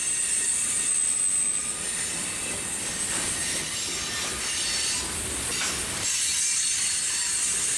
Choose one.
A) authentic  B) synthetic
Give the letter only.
A